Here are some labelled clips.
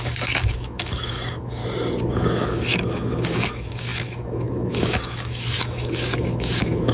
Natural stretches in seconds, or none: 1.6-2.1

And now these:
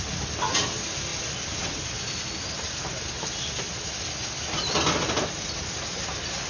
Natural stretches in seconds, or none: 0.0-6.5

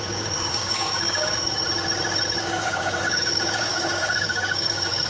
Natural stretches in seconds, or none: 1.6-2.4